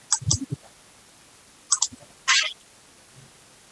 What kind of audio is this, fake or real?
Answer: real